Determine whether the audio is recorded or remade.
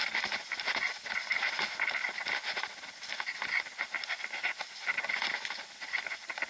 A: recorded